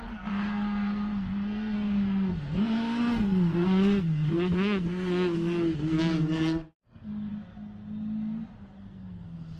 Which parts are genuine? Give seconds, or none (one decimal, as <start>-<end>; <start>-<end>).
7.3-8.8